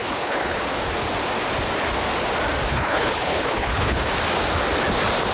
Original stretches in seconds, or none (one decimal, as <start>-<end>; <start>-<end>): 0.6-2.7; 4.1-5.3